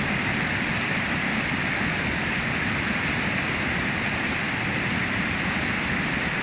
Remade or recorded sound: recorded